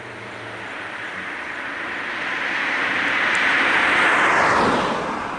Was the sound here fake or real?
fake